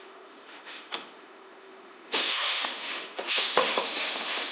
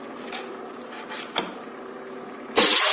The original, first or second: second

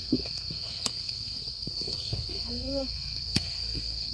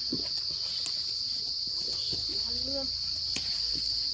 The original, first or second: second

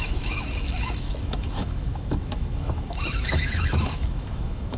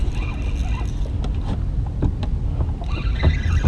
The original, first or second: second